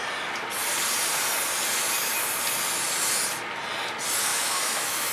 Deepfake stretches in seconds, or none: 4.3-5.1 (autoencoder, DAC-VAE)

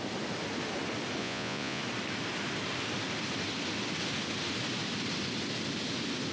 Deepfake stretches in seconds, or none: 1.2-1.8 (vocoder, Vocos)

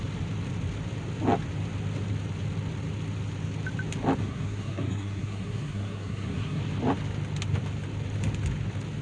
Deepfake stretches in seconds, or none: 4.2-6.6 (codec, SNAC)

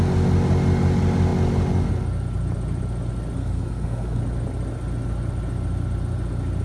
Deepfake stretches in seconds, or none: 3.4-4.2 (codec, SNAC)

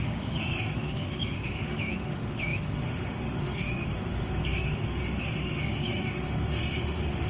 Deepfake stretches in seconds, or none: 0.0-7.3 (autoencoder, DAC-VAE)

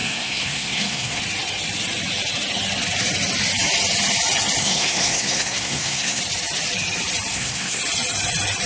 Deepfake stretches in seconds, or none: 0.0-1.2 (codec, SNAC); 4.6-6.2; 7.3-7.8

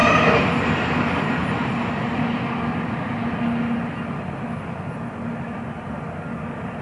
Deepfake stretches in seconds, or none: 0.6-1.4 (vocoder, BigVGAN v2); 5.5-6.8